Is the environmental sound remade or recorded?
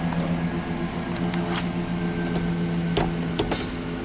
recorded